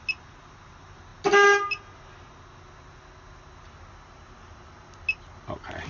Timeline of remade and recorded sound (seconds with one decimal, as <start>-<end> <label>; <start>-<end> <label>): 0.0-5.9 recorded